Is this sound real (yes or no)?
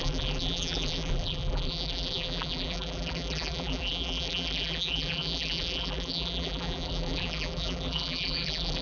no